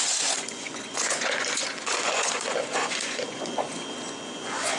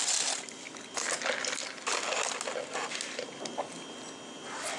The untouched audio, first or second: second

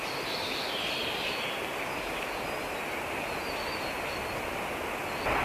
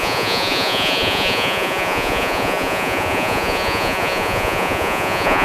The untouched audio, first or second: first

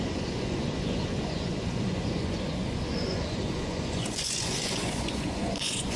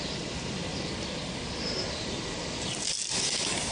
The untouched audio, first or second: second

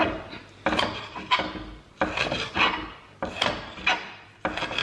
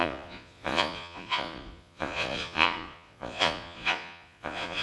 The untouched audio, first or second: first